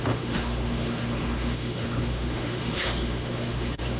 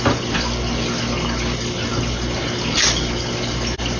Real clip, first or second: second